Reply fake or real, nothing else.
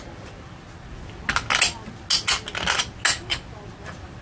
real